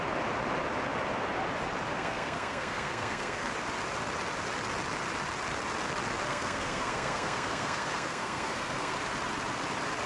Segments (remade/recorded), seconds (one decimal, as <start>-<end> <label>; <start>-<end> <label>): 0.0-1.9 recorded; 1.9-3.5 remade; 3.5-6.3 recorded; 6.3-8.9 remade; 8.9-10.1 recorded